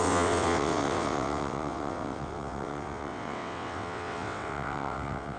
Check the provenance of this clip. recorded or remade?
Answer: remade